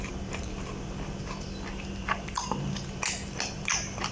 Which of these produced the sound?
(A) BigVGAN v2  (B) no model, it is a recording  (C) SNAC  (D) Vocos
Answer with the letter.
B